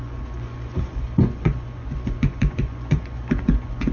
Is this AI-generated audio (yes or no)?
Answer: yes